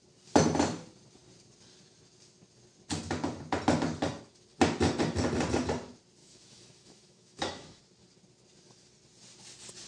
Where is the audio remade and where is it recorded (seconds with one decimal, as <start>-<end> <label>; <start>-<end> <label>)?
0.0-6.2 recorded; 6.2-7.8 remade; 7.8-9.9 recorded